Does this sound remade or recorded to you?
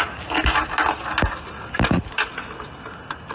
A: recorded